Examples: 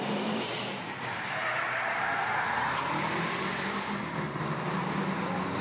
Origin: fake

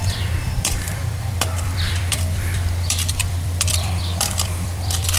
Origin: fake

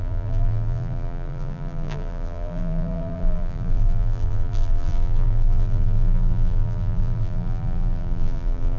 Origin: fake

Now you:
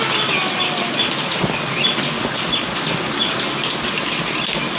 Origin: real